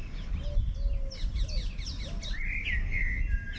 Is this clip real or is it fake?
real